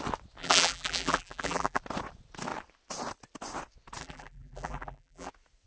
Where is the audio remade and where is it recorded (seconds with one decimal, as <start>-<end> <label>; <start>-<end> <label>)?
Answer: 0.0-0.4 recorded; 0.4-1.8 remade; 1.8-4.0 recorded; 4.0-5.3 remade; 5.3-5.7 recorded